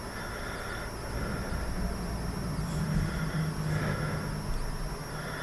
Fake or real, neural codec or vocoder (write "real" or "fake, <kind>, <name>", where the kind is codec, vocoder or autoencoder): real